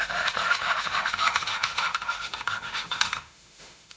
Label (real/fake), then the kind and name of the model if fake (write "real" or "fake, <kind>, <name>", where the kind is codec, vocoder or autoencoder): fake, autoencoder, DAC-VAE